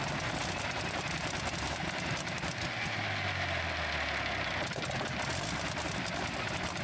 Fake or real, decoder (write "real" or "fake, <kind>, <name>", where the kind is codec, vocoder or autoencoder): real